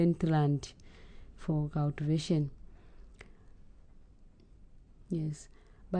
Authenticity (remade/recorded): recorded